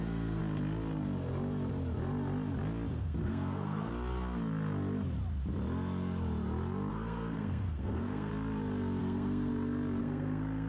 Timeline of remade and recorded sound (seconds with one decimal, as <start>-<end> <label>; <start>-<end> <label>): 0.0-0.4 remade; 0.4-2.9 recorded; 2.9-3.9 remade; 3.9-6.9 recorded; 6.9-8.3 remade; 8.3-9.0 recorded; 9.0-9.5 remade; 9.5-10.0 recorded; 10.0-10.7 remade